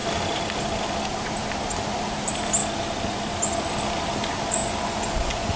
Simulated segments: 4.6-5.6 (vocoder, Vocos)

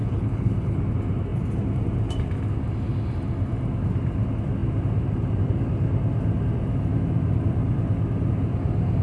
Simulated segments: 0.0-0.8 (codec, HILCodec)

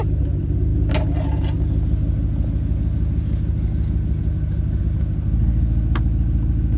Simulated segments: none

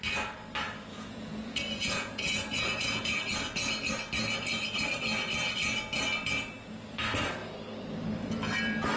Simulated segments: 0.9-3.2 (vocoder, Vocos)